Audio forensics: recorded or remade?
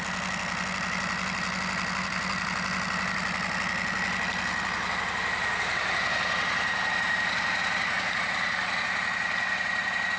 recorded